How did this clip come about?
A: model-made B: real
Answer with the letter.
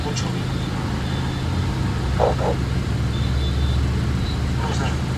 B